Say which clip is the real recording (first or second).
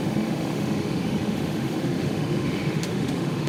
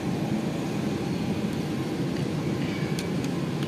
second